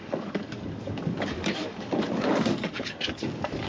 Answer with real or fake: fake